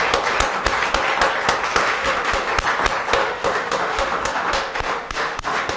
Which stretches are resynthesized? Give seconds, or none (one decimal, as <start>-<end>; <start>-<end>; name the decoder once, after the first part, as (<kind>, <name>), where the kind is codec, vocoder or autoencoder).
1.8-2.5 (autoencoder, DAC-VAE); 3.2-5.8